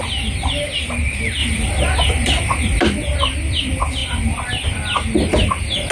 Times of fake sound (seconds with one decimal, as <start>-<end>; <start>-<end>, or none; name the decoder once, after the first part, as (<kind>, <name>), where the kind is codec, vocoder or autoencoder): none